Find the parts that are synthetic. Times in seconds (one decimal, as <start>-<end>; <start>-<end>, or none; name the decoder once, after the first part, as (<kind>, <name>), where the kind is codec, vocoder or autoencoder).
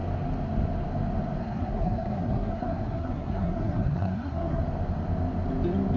1.4-4.6 (codec, SNAC)